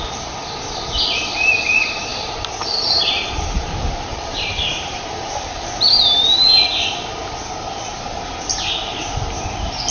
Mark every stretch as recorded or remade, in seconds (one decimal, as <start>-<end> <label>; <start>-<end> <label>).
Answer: 0.0-2.1 recorded; 2.1-5.8 remade; 5.8-9.9 recorded